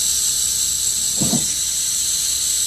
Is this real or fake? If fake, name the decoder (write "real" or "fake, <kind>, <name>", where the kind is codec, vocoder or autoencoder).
fake, vocoder, BigVGAN v2